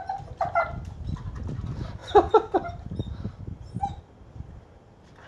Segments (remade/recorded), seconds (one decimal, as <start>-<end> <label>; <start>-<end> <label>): 0.0-5.3 recorded